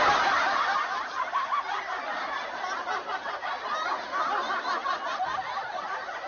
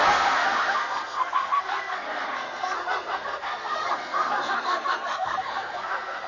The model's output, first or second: second